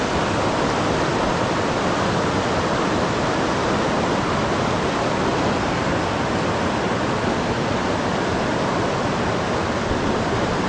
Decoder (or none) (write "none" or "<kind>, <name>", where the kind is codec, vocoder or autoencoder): none